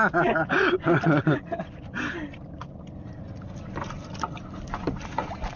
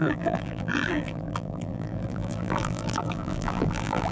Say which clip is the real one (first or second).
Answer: first